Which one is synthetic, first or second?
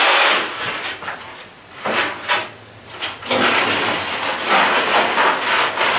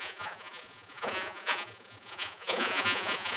second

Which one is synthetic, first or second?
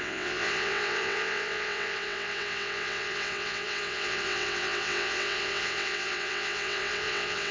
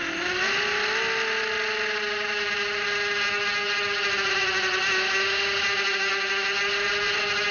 first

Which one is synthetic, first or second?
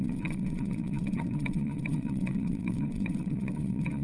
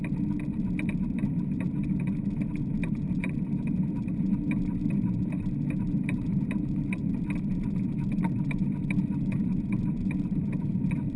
first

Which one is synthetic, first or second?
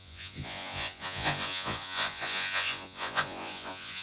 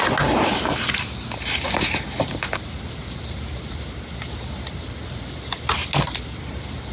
first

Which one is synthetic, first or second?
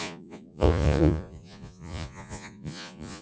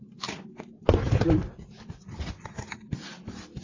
first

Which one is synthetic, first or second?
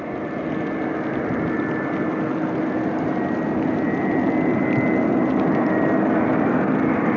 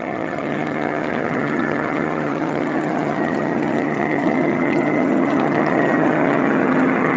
second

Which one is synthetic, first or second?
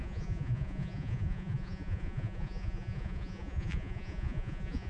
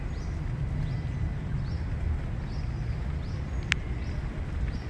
first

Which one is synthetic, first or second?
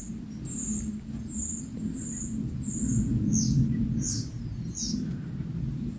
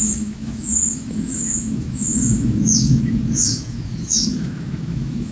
second